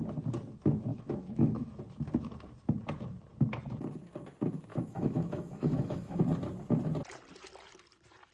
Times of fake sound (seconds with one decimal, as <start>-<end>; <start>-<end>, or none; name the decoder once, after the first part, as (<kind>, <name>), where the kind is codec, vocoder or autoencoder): 0.9-1.8 (autoencoder, DAC-VAE); 4.7-6.2